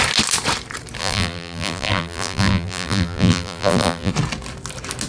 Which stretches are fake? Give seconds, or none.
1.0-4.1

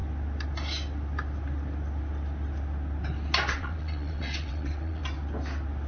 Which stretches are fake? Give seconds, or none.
3.5-5.0

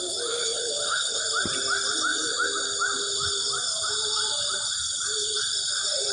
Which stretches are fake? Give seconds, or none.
0.4-1.2

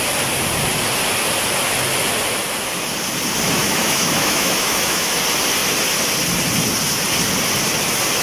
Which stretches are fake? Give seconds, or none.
3.6-5.1

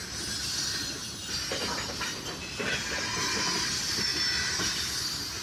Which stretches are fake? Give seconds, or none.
0.0-1.0; 3.6-4.1; 4.6-5.4

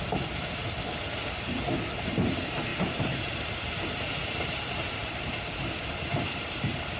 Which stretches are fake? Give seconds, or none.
2.7-7.0

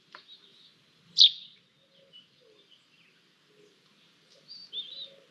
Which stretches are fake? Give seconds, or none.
0.0-0.7; 3.7-4.6